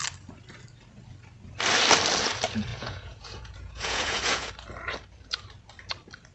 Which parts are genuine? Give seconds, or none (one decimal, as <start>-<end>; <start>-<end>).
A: 0.0-2.7; 4.5-6.3